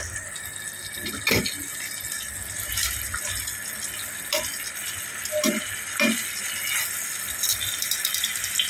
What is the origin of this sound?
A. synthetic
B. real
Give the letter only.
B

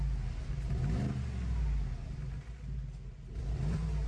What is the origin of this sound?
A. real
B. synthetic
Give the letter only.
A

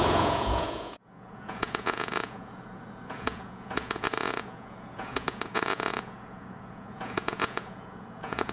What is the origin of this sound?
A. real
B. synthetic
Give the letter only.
B